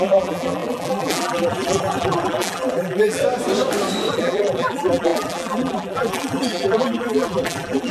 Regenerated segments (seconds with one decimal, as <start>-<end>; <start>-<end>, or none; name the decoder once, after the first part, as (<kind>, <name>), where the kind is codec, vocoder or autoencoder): 0.0-3.2 (vocoder, BigVGAN v2); 4.1-7.9